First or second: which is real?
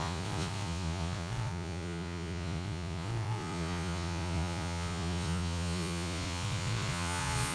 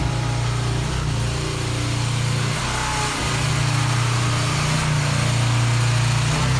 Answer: second